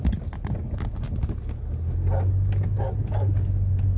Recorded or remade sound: recorded